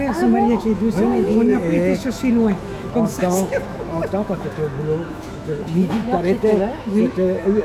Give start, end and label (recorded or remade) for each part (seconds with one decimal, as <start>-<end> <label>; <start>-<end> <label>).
0.0-7.6 remade